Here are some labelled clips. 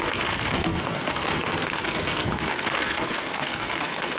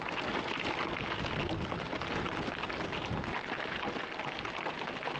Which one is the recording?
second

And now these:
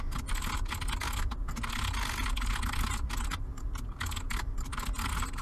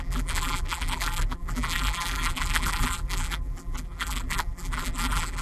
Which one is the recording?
first